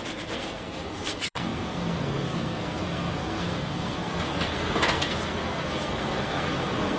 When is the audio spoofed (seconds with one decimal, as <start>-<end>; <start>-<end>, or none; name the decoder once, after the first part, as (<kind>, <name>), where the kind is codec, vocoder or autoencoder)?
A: 0.0-7.0 (codec, SNAC)